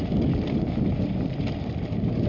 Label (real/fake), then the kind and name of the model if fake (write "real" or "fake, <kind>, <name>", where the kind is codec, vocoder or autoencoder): real